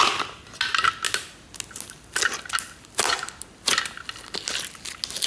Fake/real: real